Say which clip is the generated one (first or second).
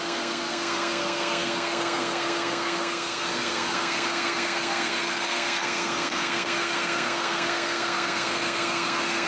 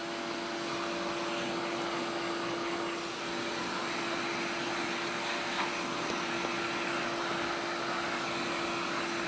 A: first